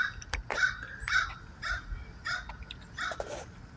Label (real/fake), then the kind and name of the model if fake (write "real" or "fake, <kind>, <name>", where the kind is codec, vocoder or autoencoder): real